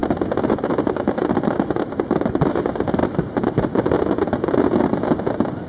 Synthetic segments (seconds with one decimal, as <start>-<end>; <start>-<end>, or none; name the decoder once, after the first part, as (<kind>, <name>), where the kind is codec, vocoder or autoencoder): 0.0-2.6 (vocoder, BigVGAN v2); 3.0-3.7